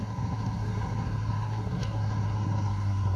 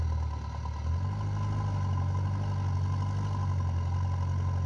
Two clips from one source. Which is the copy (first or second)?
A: first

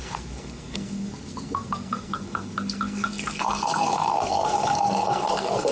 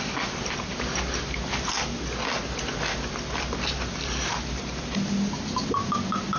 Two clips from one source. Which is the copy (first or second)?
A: first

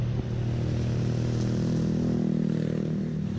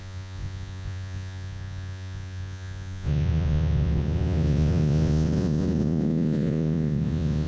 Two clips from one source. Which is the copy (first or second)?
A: second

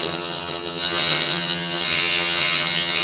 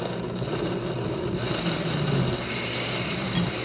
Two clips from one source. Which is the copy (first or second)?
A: first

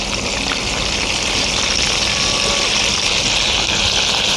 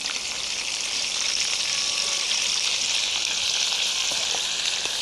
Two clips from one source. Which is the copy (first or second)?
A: second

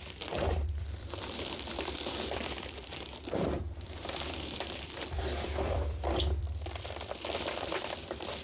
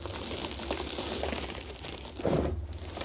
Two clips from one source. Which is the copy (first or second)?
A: first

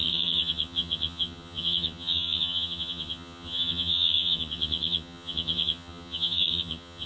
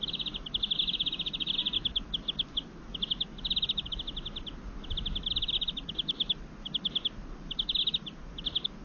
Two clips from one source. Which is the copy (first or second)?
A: first